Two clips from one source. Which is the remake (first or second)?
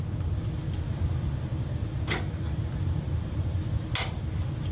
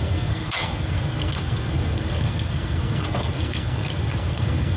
second